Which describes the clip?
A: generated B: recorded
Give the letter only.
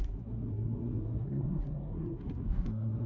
A